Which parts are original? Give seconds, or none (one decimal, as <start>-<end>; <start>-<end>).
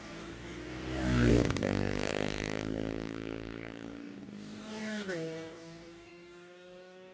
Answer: none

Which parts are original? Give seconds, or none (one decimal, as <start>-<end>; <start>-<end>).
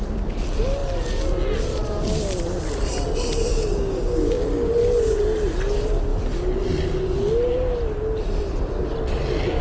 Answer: 0.0-3.5; 4.7-9.6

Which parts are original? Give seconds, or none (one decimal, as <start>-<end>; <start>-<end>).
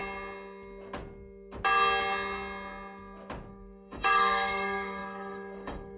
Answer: 0.0-3.5